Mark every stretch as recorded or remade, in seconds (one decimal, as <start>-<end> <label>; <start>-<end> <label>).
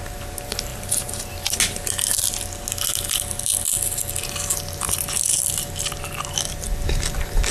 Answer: 0.0-0.7 recorded; 0.7-1.2 remade; 1.2-7.5 recorded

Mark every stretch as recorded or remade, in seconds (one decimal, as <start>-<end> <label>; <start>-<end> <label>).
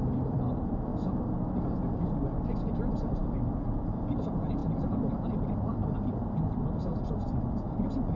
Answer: 0.0-8.2 recorded